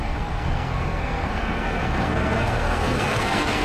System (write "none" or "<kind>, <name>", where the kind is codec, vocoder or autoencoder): codec, SNAC